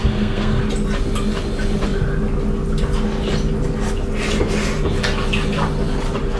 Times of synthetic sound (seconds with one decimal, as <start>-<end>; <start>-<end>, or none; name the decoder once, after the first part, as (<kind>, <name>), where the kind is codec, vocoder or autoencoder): 0.0-0.6 (codec, SNAC)